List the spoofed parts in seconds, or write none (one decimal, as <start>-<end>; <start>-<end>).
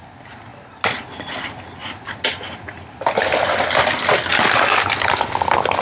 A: none